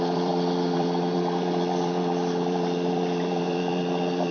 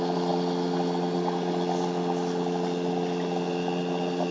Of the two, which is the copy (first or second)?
first